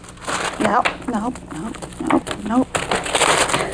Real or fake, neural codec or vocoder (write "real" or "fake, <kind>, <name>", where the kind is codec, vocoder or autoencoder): real